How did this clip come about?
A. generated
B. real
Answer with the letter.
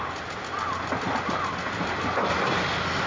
B